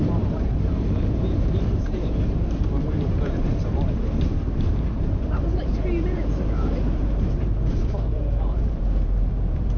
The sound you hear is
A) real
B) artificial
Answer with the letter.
B